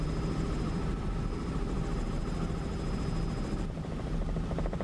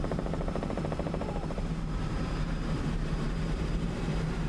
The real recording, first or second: first